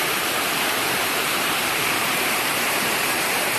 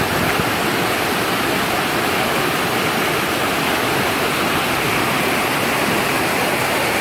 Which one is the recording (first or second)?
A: second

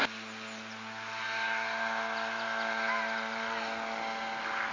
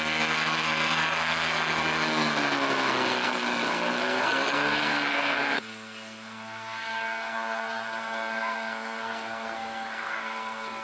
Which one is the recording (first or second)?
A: first